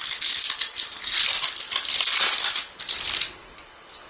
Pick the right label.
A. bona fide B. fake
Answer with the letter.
A